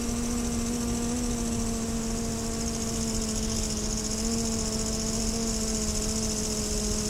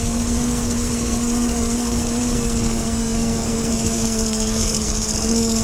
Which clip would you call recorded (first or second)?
first